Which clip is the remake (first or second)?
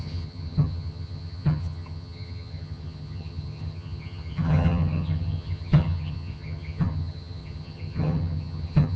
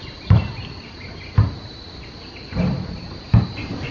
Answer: first